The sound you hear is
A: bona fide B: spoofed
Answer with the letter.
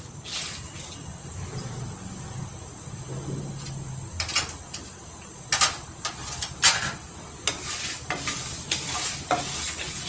A